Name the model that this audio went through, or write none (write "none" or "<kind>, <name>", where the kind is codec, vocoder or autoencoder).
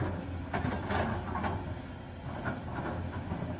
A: none